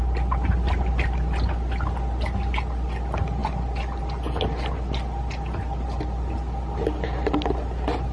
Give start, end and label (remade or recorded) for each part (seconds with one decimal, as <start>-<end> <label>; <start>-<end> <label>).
0.0-8.1 recorded